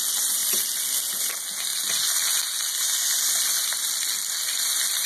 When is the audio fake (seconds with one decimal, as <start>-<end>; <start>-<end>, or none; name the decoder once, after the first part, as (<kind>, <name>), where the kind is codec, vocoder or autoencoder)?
none